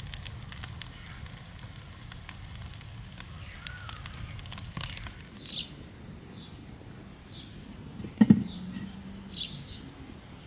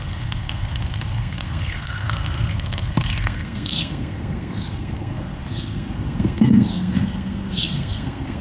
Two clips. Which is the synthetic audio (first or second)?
second